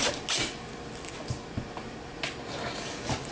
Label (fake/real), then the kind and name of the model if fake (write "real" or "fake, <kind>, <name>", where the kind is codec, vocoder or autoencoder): real